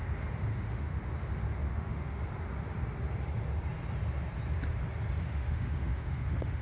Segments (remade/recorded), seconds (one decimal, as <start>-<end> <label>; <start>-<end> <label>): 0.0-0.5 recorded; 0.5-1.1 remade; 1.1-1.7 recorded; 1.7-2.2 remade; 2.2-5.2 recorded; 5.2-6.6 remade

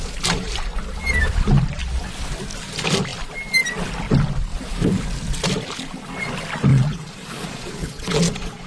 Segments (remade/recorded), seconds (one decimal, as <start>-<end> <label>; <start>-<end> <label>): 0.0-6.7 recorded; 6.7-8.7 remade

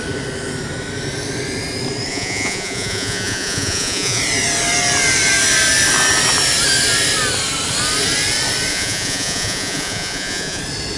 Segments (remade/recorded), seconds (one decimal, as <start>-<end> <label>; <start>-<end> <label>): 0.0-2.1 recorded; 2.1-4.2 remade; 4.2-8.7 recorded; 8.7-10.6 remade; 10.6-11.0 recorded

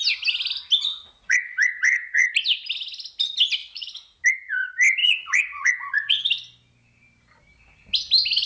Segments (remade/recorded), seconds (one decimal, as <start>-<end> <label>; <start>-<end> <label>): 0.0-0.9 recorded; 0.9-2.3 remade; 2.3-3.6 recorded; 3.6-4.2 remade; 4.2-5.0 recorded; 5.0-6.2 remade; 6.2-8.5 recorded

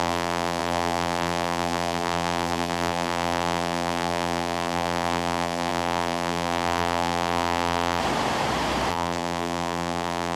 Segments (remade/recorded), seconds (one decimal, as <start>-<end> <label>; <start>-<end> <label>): 0.0-8.0 remade; 8.0-8.9 recorded; 8.9-10.4 remade

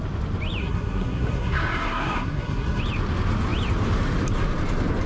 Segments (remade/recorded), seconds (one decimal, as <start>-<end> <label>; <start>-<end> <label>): 0.0-0.6 recorded; 0.6-2.8 remade; 2.8-5.1 recorded

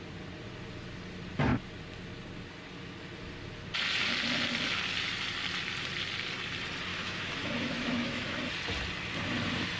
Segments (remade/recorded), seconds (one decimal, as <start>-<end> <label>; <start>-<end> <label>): 0.0-6.9 recorded; 6.9-8.4 remade; 8.4-9.8 recorded